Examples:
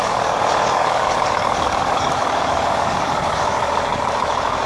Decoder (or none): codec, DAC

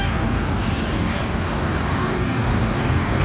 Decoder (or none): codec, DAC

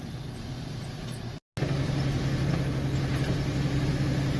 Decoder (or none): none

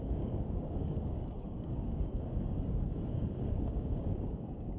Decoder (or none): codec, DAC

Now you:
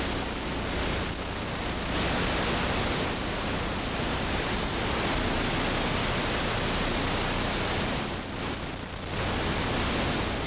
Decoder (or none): none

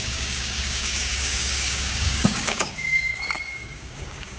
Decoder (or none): codec, DAC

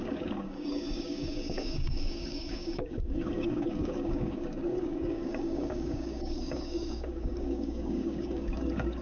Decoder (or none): codec, DAC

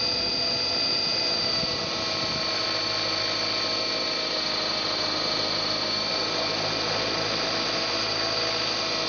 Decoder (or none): none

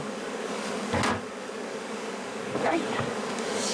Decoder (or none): codec, DAC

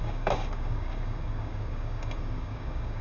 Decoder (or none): codec, DAC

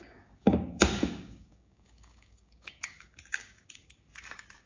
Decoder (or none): codec, DAC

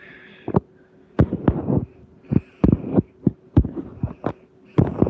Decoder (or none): none